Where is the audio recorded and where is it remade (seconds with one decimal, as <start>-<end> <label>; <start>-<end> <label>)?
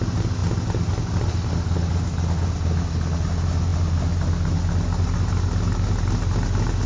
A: 0.0-6.9 recorded